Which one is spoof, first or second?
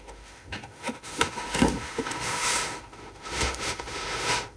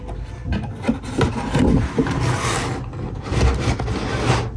first